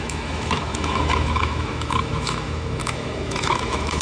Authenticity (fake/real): fake